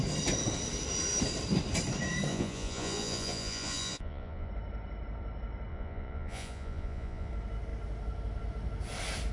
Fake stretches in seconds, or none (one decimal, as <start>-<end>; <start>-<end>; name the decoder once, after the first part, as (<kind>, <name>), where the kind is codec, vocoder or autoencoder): 2.3-4.5 (vocoder, Vocos); 5.7-7.3